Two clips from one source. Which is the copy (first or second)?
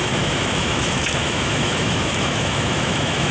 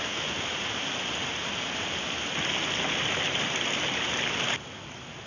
first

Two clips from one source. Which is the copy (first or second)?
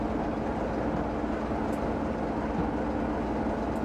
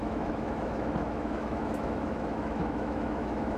second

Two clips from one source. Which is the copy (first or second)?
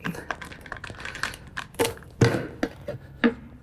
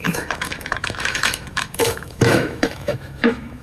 second